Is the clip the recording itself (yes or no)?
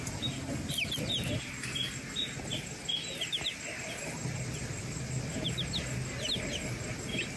yes